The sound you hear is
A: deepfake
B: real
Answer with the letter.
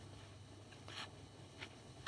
A